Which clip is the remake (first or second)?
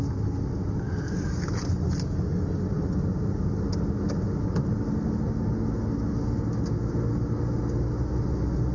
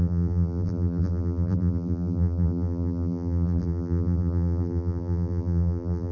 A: second